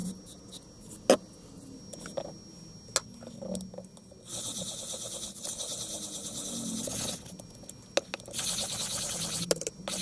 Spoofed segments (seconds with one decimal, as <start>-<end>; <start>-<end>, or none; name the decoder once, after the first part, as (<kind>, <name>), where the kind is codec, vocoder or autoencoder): none